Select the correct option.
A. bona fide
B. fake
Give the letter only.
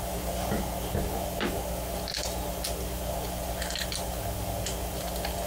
A